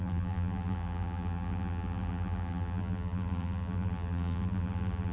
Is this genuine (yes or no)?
no